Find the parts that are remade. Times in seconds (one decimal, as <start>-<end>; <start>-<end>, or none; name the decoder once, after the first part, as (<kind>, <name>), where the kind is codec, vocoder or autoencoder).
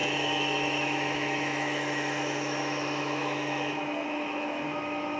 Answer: 0.0-5.2 (autoencoder, DAC-VAE)